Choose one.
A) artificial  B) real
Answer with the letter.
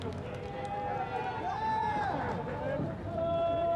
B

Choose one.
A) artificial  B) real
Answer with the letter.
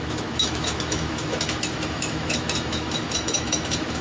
A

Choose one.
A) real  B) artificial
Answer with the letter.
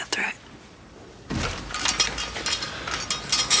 A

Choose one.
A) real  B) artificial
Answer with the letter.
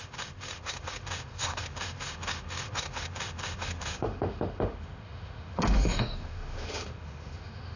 B